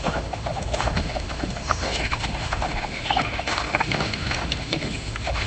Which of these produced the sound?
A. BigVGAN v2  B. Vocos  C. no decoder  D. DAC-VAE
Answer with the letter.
D